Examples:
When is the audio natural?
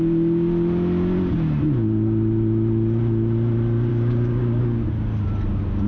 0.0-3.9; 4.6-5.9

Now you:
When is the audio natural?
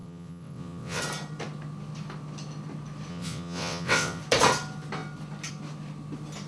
1.0-3.1; 4.2-6.5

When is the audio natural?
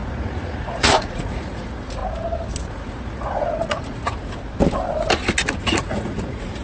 2.0-2.7; 4.1-5.6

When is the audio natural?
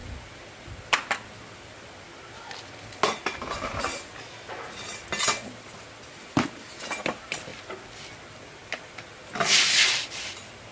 0.0-10.7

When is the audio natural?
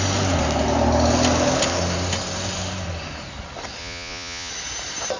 0.0-3.8; 4.5-5.2